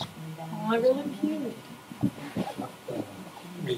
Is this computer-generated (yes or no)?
no